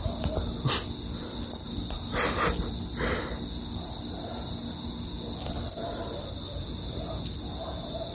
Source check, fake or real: real